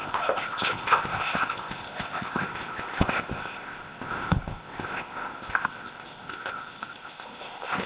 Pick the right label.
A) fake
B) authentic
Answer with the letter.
A